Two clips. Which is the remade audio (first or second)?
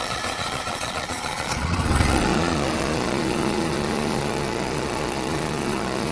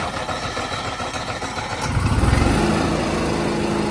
first